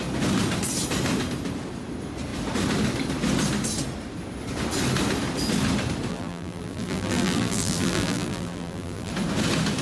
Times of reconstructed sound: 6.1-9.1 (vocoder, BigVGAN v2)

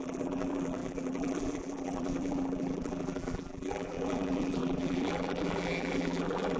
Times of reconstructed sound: 0.0-6.6 (vocoder, BigVGAN v2)

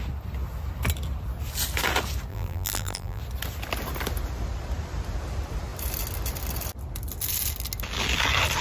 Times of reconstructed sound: 2.3-3.2 (vocoder, BigVGAN v2)

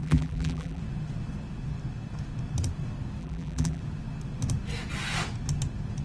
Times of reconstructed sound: 0.0-0.8 (vocoder, BigVGAN v2); 3.2-3.8

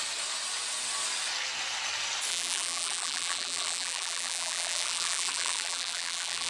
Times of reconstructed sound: 2.3-6.5 (vocoder, BigVGAN v2)